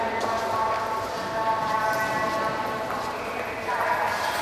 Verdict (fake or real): real